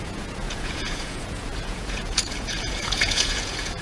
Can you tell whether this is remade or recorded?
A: remade